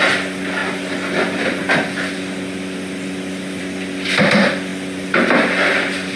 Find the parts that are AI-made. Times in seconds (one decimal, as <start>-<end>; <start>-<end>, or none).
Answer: none